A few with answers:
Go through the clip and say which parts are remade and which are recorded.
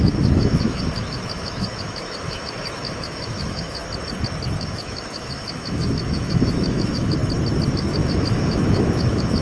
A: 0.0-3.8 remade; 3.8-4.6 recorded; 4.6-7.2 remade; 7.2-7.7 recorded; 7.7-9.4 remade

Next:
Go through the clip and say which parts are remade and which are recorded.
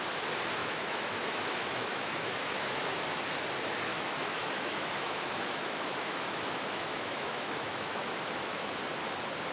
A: 0.0-0.6 recorded; 0.6-3.2 remade; 3.2-3.9 recorded; 3.9-8.8 remade; 8.8-9.5 recorded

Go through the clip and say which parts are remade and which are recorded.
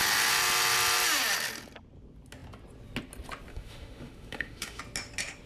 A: 0.0-3.5 recorded; 3.5-4.8 remade; 4.8-5.5 recorded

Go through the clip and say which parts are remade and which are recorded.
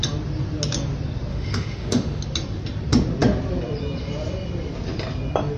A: 0.0-1.3 recorded; 1.3-2.2 remade; 2.2-5.6 recorded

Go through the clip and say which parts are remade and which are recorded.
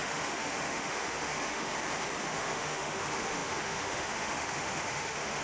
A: 0.0-1.7 remade; 1.7-2.2 recorded; 2.2-5.4 remade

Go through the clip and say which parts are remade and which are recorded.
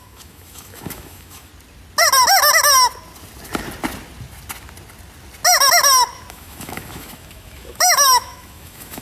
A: 0.0-1.5 remade; 1.5-6.3 recorded; 6.3-9.0 remade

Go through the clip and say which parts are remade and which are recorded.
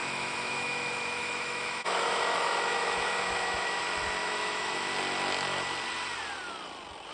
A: 0.0-3.8 remade; 3.8-4.2 recorded; 4.2-4.9 remade; 4.9-7.1 recorded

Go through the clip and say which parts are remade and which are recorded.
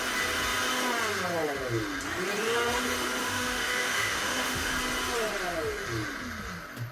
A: 0.0-3.2 recorded; 3.2-4.7 remade; 4.7-6.9 recorded